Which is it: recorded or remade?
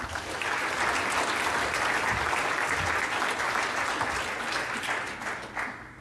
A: recorded